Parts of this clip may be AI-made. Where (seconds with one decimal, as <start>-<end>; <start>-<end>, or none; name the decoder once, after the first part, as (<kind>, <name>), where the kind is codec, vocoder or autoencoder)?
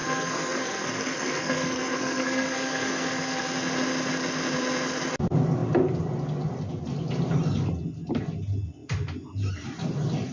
0.0-3.4 (codec, SNAC)